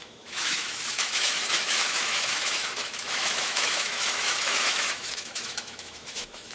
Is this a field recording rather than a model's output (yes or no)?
no